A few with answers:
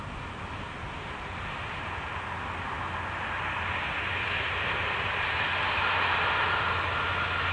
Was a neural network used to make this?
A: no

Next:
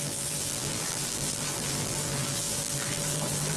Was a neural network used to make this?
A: yes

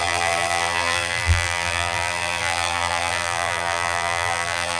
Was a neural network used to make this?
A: yes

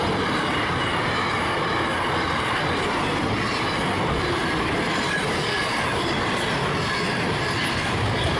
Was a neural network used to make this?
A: no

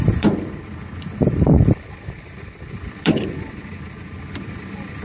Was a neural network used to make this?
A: yes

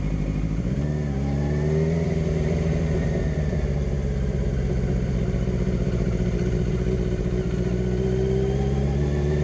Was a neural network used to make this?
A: no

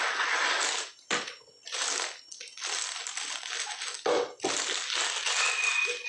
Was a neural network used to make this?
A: no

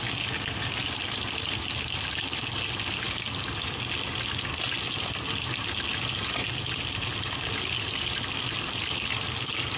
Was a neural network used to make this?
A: no